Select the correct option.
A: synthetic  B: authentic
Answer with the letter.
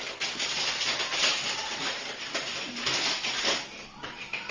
A